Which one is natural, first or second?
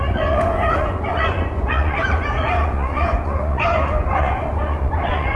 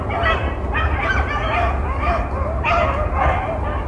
second